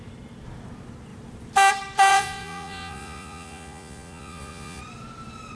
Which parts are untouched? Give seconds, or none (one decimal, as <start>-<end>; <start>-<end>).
0.0-2.1; 4.8-5.5